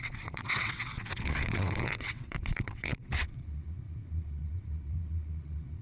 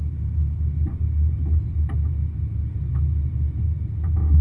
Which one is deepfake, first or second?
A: first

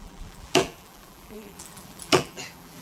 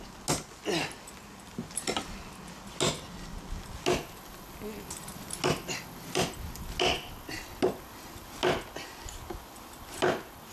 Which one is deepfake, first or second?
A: first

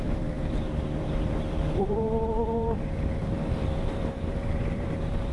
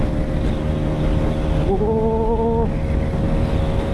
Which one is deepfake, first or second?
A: first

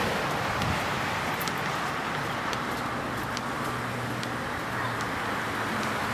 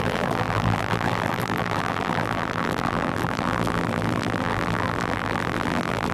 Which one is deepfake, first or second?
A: second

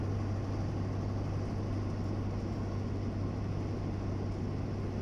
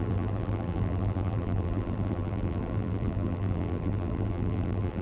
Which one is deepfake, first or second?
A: second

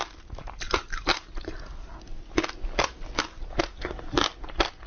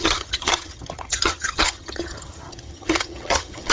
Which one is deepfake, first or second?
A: second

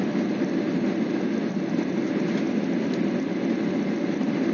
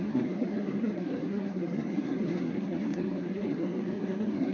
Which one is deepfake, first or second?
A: second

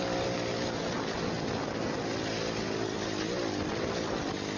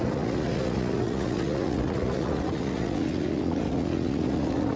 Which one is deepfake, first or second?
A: second